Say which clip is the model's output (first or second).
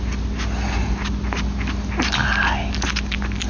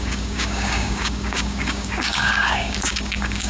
second